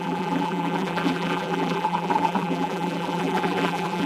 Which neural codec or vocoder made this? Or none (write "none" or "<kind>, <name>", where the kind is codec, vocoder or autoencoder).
vocoder, BigVGAN v2